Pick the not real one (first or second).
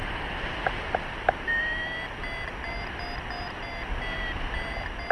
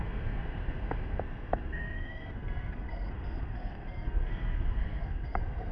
second